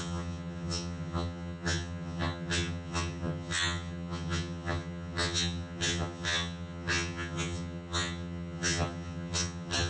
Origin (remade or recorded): remade